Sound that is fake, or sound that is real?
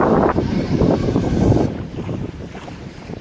fake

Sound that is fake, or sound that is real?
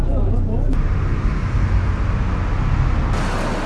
real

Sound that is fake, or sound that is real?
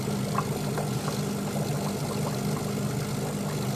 real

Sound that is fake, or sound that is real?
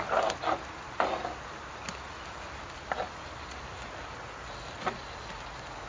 real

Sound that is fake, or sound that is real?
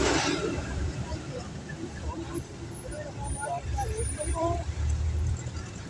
fake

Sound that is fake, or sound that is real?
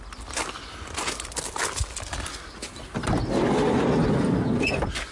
real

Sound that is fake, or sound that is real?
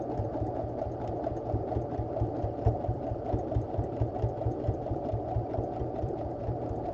fake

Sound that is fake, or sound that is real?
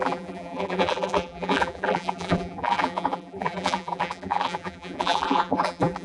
fake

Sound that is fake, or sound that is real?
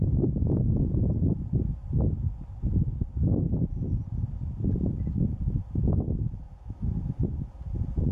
real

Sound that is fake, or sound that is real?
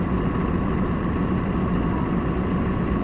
fake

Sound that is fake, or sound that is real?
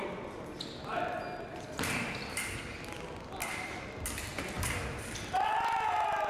real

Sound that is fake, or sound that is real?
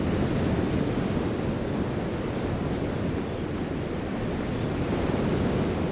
real